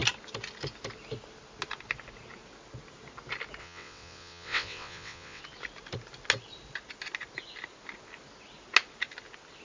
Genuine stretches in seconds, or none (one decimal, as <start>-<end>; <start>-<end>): 0.0-3.6; 5.4-9.6